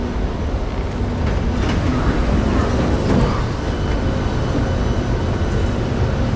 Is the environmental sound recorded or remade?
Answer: recorded